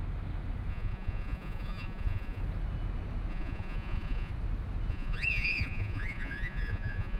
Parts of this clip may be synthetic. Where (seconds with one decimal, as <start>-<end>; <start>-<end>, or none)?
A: 0.7-2.4; 3.3-4.3; 4.9-7.2